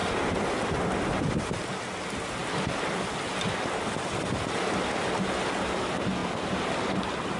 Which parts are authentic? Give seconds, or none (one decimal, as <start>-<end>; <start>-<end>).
0.0-7.4